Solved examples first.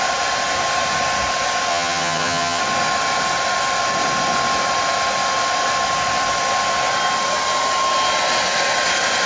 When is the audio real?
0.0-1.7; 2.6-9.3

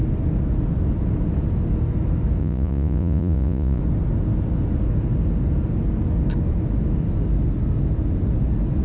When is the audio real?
0.0-2.4; 3.8-8.8

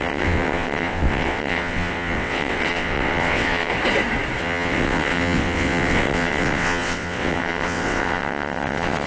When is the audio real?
3.7-4.4

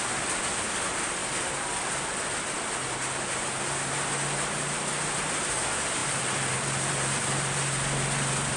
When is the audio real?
0.0-8.6

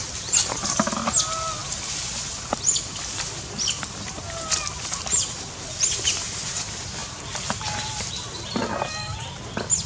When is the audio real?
0.0-9.9

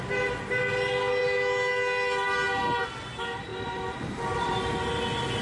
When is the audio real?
0.0-3.5; 4.5-5.4

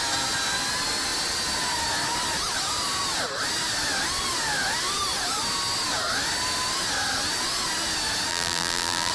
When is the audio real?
0.0-8.3